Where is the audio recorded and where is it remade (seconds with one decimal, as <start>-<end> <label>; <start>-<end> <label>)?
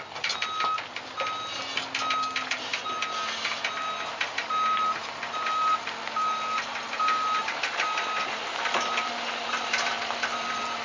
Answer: 0.0-10.8 recorded